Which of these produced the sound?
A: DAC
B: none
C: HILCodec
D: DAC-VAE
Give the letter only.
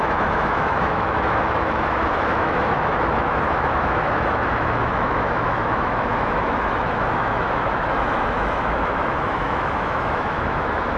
D